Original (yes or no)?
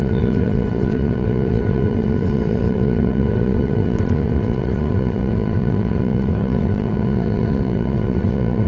no